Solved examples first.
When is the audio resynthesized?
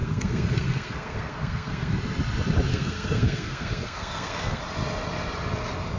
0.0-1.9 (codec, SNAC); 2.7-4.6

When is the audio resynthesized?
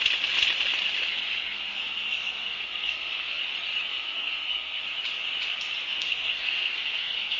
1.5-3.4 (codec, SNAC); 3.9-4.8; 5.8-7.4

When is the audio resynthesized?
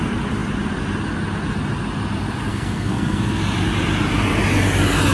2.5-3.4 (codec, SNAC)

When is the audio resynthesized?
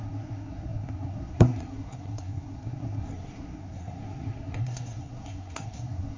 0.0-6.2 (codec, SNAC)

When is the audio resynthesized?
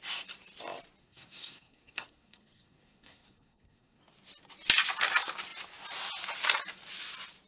1.0-4.0 (codec, SNAC)